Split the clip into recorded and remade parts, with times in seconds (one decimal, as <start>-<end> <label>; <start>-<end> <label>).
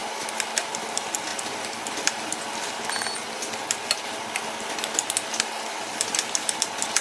0.0-7.0 recorded